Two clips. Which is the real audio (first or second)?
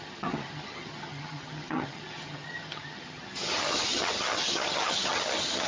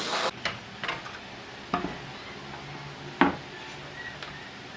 second